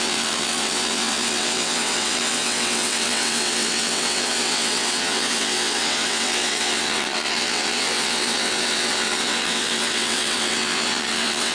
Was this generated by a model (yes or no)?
yes